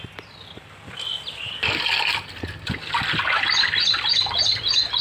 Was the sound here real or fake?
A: real